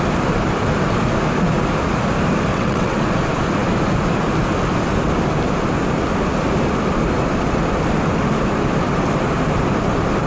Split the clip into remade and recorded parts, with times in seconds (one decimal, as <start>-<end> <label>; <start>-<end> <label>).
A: 0.0-2.5 recorded; 2.5-3.1 remade; 3.1-10.3 recorded